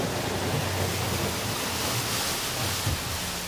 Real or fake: real